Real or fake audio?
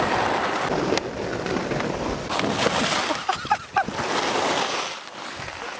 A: real